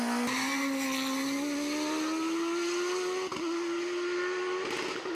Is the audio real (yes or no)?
yes